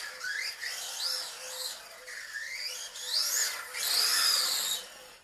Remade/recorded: recorded